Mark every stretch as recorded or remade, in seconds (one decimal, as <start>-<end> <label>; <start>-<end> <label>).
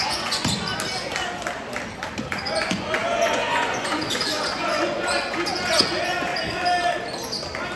0.0-0.7 remade; 0.7-2.1 recorded; 2.1-6.3 remade; 6.3-7.8 recorded